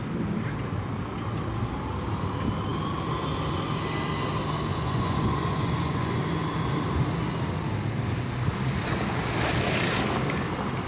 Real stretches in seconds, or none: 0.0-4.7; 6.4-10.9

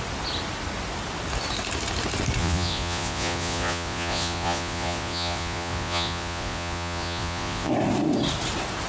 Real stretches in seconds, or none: 0.0-2.4; 7.7-8.9